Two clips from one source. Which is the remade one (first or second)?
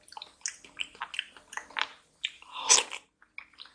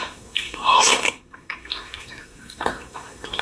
second